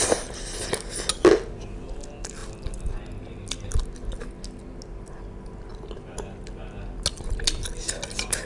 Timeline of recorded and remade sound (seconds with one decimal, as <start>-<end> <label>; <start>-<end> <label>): 0.0-8.5 recorded

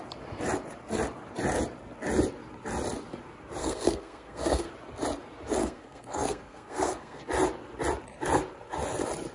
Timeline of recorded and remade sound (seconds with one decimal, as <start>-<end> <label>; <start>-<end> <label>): 0.0-3.6 recorded; 3.6-4.7 remade; 4.7-5.6 recorded; 5.6-7.2 remade; 7.2-9.3 recorded

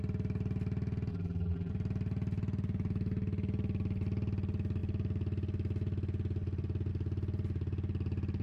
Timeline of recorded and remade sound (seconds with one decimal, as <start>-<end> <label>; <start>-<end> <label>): 0.0-1.1 recorded; 1.1-1.7 remade; 1.7-8.4 recorded

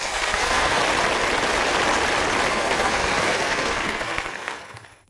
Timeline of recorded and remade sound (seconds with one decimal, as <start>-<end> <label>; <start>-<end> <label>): 0.0-0.8 remade; 0.8-2.5 recorded; 2.5-5.1 remade

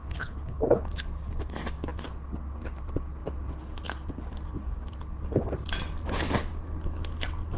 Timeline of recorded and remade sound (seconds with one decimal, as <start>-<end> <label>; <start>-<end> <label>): 0.0-0.8 remade; 0.8-7.6 recorded

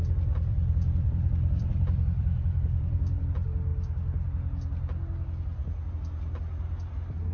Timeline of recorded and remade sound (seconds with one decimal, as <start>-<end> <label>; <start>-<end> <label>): 0.0-0.5 recorded; 0.5-3.2 remade; 3.2-7.3 recorded

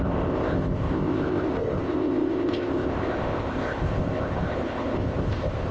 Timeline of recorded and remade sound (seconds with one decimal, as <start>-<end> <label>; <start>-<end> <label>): 0.0-5.7 remade

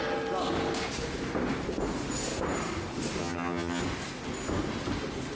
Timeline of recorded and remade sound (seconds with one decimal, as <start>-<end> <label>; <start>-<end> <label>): 0.0-3.2 recorded; 3.2-3.8 remade; 3.8-5.3 recorded